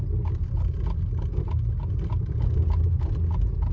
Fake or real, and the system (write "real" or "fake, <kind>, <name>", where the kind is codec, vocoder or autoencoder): real